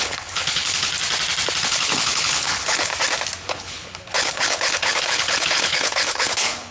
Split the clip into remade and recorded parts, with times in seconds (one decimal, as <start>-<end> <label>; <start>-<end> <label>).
0.0-0.9 remade; 0.9-1.6 recorded; 1.6-2.9 remade; 2.9-3.5 recorded; 3.5-6.7 remade